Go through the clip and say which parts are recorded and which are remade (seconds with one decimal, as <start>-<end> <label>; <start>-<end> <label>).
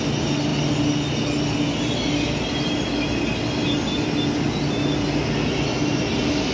0.0-6.5 recorded